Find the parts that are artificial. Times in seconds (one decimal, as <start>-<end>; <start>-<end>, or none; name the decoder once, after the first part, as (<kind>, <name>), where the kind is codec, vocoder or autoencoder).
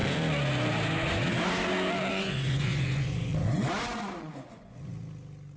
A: 2.1-3.3 (vocoder, Vocos); 4.1-4.9